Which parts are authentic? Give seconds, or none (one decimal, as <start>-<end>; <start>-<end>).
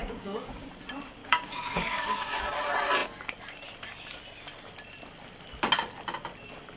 0.7-1.2; 2.4-6.8